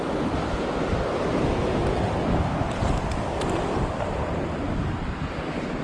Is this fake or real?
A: real